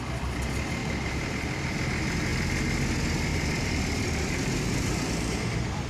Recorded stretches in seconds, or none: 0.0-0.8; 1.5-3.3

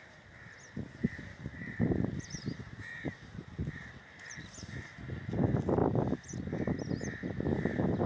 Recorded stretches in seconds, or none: 0.0-1.0; 5.0-5.8; 6.4-8.1

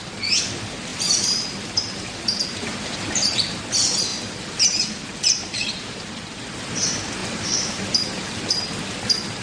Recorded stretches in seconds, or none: 0.0-0.9; 3.6-4.1; 6.1-7.2; 8.4-9.4